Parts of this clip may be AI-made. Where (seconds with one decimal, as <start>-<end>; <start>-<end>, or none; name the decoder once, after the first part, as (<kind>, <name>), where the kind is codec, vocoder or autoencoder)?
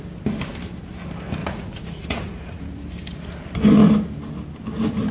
1.4-2.6 (vocoder, Vocos)